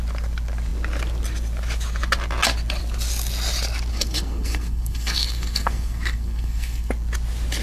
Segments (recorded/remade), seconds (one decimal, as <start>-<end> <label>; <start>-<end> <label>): 0.0-3.9 recorded; 3.9-6.9 remade; 6.9-7.6 recorded

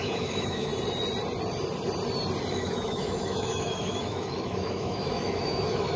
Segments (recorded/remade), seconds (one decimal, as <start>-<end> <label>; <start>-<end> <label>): 0.0-0.7 remade; 0.7-2.5 recorded; 2.5-6.0 remade